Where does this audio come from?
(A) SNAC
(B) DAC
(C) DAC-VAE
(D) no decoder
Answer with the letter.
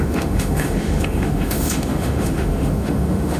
C